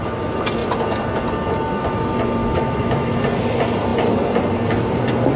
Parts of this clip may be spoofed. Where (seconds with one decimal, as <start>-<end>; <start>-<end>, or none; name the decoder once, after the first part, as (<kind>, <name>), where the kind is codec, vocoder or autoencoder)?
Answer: 2.4-3.2 (autoencoder, DAC-VAE)